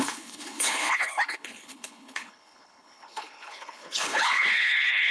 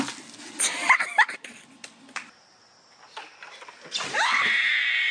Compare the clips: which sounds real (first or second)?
second